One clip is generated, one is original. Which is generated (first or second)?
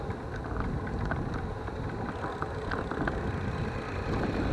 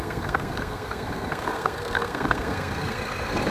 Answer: second